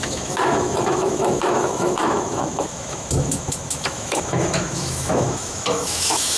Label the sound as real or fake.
fake